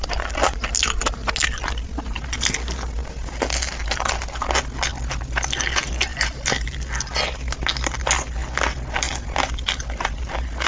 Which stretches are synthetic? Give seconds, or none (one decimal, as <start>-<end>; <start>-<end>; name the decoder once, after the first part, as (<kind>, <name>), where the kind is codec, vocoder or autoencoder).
none